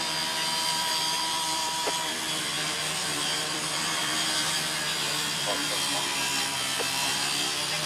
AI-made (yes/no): yes